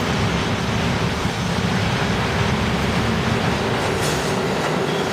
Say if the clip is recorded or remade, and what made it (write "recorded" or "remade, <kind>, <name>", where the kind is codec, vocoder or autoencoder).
recorded